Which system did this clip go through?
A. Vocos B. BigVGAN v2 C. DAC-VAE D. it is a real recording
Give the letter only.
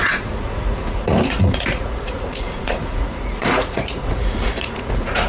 A